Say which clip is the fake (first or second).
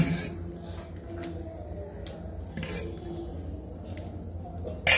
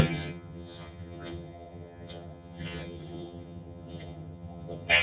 second